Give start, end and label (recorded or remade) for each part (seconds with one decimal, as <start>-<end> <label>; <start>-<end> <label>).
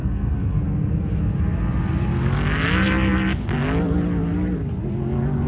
0.0-0.6 remade; 0.6-5.5 recorded